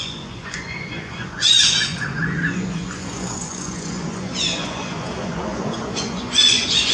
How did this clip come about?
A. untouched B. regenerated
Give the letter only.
B